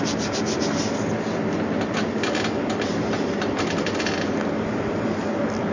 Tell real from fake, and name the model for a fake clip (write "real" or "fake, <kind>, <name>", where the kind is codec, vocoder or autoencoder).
real